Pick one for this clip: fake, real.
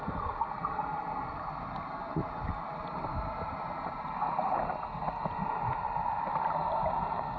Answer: real